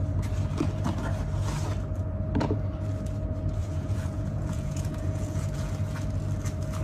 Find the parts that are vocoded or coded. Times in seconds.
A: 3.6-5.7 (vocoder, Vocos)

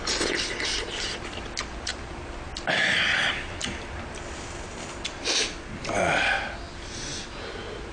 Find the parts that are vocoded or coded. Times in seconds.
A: none

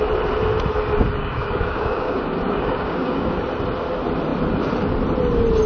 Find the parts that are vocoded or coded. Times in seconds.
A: 1.2-3.4 (codec, DAC)

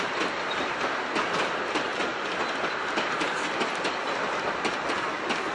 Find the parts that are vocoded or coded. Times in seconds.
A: none